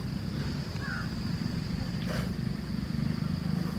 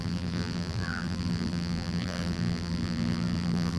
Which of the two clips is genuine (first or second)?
first